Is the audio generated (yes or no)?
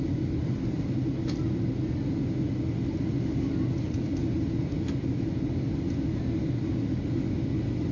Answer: no